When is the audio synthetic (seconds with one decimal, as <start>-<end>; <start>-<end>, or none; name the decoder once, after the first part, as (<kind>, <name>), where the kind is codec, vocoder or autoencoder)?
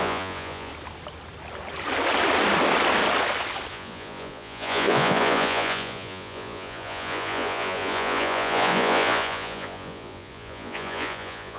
0.0-0.7 (vocoder, Vocos); 3.7-11.6